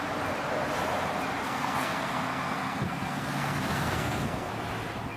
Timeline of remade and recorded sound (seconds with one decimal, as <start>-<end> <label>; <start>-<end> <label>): 0.0-1.4 recorded; 1.4-4.5 remade; 4.5-5.2 recorded